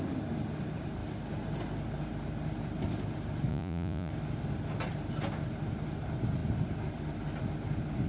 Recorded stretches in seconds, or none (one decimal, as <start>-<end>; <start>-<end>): 0.0-3.5; 4.1-8.1